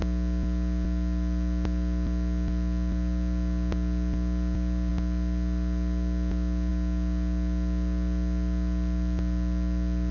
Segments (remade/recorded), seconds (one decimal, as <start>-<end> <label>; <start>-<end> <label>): 0.0-10.1 recorded